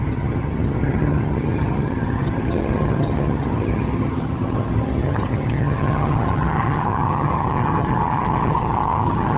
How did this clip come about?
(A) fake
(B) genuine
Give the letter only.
A